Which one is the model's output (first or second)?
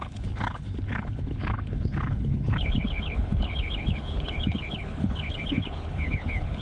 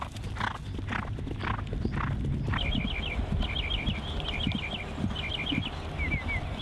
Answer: first